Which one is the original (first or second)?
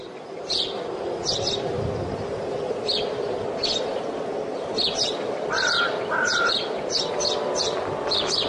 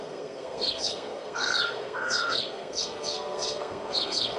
first